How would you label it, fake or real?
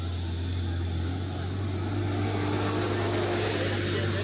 real